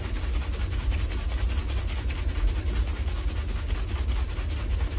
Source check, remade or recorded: recorded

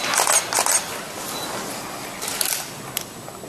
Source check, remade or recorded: recorded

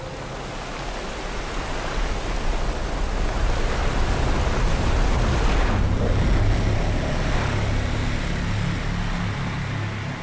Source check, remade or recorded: recorded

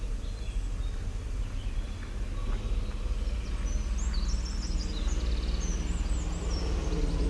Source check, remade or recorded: recorded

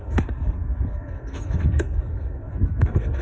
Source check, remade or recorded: remade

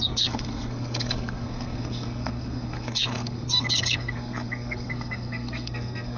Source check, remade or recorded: remade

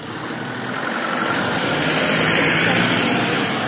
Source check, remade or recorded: recorded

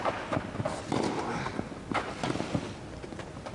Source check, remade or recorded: recorded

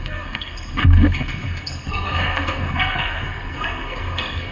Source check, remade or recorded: remade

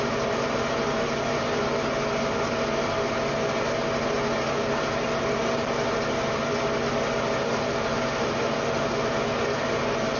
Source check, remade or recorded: recorded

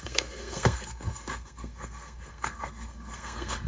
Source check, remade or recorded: remade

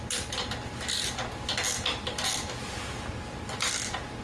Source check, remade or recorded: recorded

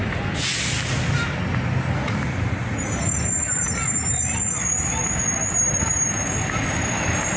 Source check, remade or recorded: recorded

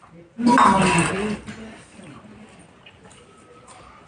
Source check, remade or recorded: recorded